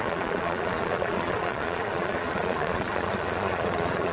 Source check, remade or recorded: remade